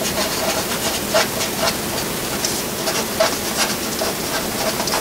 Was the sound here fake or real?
real